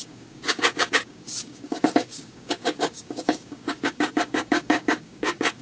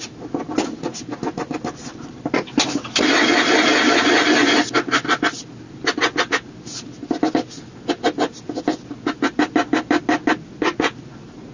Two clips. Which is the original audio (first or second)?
second